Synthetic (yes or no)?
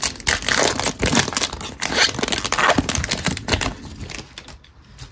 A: no